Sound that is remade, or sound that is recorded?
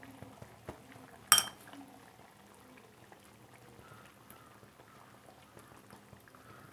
recorded